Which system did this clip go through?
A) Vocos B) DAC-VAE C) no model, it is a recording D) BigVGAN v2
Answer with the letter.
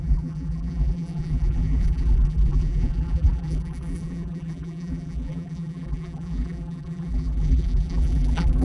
D